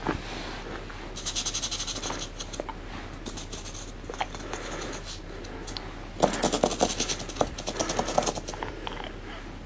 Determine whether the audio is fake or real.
real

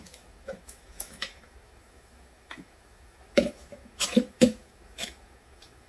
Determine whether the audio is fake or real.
fake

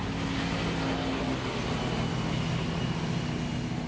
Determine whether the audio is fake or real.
real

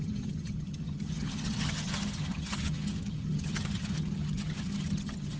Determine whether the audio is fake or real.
fake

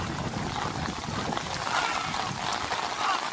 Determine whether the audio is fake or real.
real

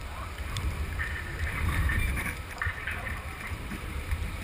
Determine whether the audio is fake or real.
fake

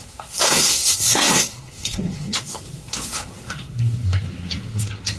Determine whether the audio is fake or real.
fake